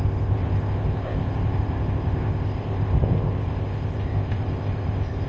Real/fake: fake